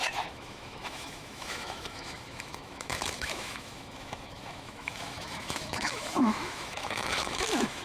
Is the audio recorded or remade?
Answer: remade